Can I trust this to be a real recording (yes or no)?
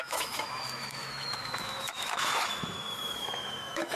no